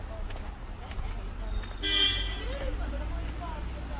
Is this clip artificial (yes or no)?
no